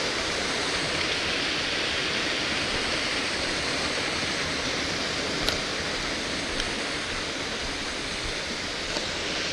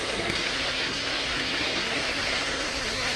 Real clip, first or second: first